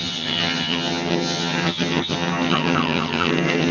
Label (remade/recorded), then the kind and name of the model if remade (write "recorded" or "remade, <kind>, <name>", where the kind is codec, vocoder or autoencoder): remade, vocoder, HiFi-GAN